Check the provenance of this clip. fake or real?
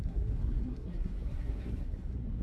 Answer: fake